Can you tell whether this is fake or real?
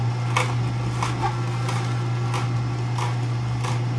real